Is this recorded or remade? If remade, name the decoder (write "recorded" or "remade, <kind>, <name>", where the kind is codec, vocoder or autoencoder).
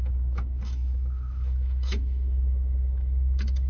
remade, autoencoder, DAC-VAE